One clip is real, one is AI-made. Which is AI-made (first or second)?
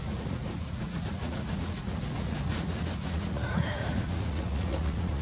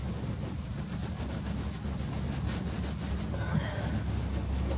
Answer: first